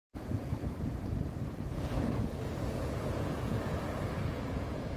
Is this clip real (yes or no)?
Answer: no